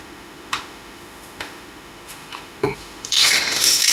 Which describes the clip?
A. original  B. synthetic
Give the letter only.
B